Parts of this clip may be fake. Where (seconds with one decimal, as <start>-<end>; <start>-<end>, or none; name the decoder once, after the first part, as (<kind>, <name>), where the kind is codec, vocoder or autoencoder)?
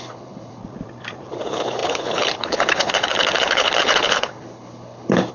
0.0-0.6 (codec, HILCodec); 1.3-5.3